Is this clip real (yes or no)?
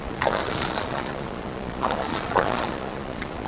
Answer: no